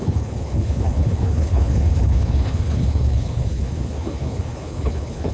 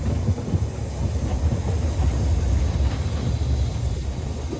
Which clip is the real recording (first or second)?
second